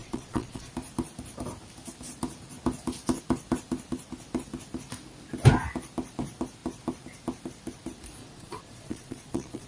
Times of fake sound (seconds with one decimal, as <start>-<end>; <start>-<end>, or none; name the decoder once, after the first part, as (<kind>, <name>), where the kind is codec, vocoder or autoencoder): 0.0-0.7 (vocoder, Vocos); 8.2-9.7